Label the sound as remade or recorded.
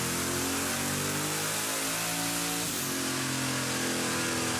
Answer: recorded